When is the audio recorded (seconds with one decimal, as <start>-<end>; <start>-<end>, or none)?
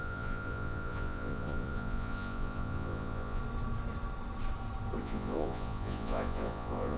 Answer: 3.4-5.0